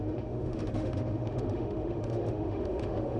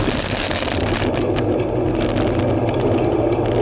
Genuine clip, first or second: second